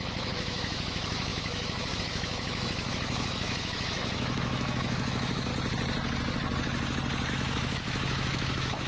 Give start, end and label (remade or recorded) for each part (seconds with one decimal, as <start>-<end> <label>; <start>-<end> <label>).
0.0-5.5 remade; 5.5-7.3 recorded; 7.3-8.9 remade